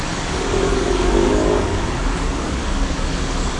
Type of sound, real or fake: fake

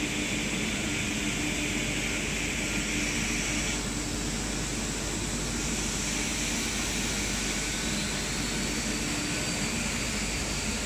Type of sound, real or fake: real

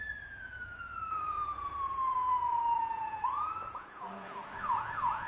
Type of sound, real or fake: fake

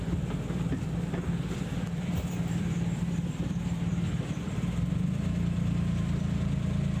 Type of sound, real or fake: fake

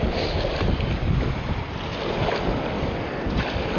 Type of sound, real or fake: real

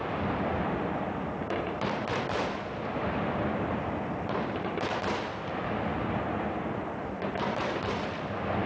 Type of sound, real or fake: fake